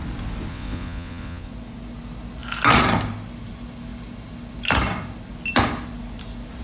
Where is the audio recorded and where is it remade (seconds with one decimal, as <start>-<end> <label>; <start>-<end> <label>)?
0.0-0.5 recorded; 0.5-1.5 remade; 1.5-6.6 recorded